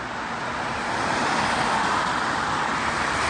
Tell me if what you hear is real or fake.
real